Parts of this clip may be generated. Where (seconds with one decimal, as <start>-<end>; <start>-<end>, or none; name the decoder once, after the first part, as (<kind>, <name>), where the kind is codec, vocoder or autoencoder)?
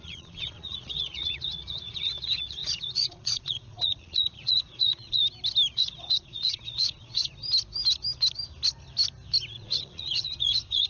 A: 0.0-5.2 (vocoder, Vocos); 5.7-7.3; 9.5-10.9